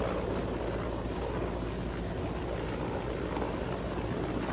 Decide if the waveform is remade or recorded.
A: recorded